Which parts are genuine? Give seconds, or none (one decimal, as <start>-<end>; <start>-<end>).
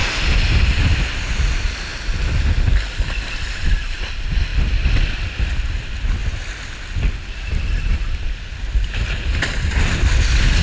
0.0-0.7; 1.9-3.0; 6.2-9.5